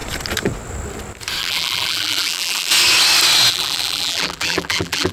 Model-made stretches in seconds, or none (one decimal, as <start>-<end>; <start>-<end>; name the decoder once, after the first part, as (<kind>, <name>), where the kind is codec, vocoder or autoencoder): 1.4-2.7 (vocoder, BigVGAN v2); 3.5-5.1